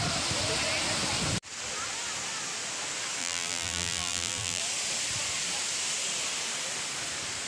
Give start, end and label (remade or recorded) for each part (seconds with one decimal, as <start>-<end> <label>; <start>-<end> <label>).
0.0-3.2 recorded; 3.2-4.6 remade; 4.6-7.5 recorded